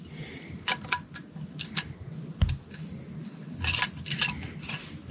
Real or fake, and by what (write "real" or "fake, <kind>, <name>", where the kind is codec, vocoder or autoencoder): real